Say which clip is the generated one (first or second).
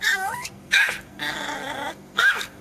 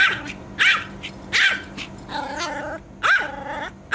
first